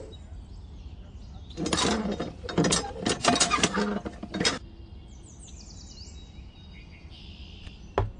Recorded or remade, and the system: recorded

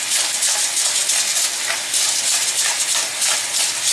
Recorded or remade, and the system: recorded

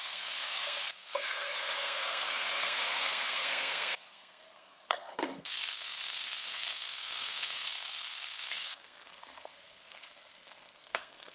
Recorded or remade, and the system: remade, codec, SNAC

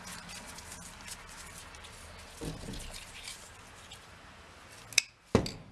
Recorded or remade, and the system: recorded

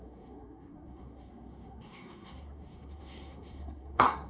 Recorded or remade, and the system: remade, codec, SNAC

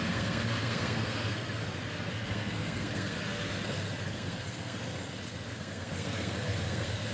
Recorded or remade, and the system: remade, codec, SNAC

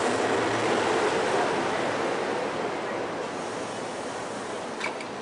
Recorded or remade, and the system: recorded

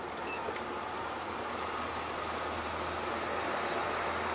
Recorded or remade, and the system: recorded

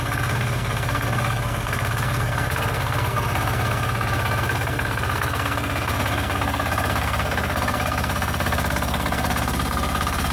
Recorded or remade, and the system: remade, codec, SNAC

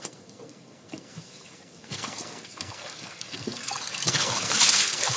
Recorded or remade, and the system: remade, codec, SNAC